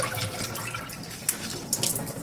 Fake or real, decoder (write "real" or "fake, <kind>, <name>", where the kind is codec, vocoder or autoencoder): fake, vocoder, BigVGAN v2